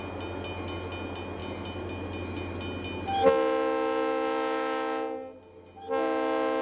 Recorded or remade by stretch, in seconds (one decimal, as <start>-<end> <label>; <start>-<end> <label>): 0.0-6.6 recorded